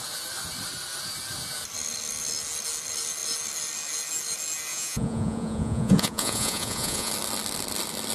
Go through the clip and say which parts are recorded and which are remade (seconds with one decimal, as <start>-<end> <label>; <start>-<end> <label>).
0.0-4.7 recorded; 4.7-7.1 remade; 7.1-8.1 recorded